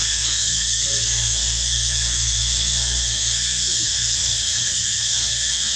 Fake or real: fake